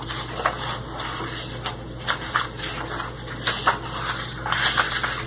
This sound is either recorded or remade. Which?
recorded